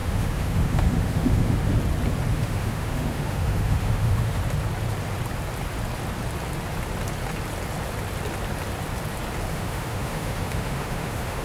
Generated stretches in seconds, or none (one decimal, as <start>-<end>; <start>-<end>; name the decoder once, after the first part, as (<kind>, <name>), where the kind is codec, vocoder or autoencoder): 0.0-1.7 (autoencoder, DAC-VAE); 2.3-4.4; 9.5-11.4